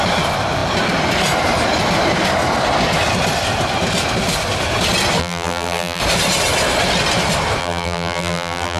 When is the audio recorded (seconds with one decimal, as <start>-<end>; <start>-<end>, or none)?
0.0-5.2; 6.0-7.6